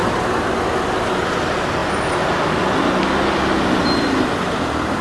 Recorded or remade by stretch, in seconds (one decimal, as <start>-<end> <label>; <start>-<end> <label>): 0.0-5.0 recorded